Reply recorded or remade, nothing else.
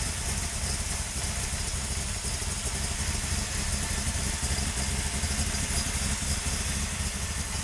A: recorded